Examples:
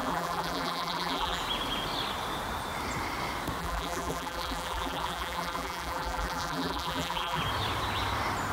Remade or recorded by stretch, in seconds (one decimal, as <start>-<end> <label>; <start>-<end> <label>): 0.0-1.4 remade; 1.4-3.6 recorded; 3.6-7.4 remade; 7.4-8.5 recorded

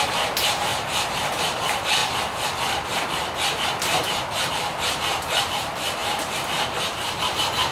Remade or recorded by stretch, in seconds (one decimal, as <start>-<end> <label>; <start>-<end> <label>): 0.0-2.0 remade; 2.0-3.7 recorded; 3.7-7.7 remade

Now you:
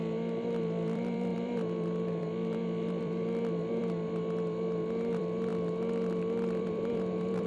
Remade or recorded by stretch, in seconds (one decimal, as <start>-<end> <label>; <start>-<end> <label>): 0.0-3.8 remade; 3.8-5.1 recorded; 5.1-5.5 remade; 5.5-6.6 recorded; 6.6-7.5 remade

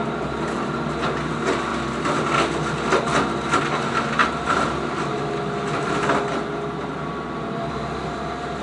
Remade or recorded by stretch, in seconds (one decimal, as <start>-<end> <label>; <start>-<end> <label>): 0.0-4.2 recorded; 4.2-5.3 remade; 5.3-6.8 recorded; 6.8-8.1 remade; 8.1-8.6 recorded